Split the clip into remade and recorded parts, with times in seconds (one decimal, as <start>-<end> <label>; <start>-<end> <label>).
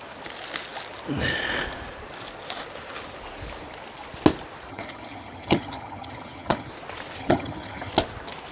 0.0-4.7 recorded; 4.7-6.7 remade; 6.7-7.2 recorded; 7.2-7.9 remade; 7.9-8.5 recorded